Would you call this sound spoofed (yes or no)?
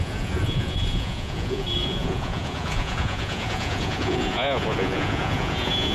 yes